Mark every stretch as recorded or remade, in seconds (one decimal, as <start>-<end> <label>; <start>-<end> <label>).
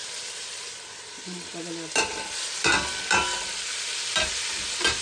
0.0-5.0 recorded